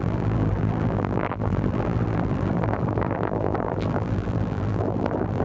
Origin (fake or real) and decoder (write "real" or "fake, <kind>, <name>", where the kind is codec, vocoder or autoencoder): fake, vocoder, BigVGAN v2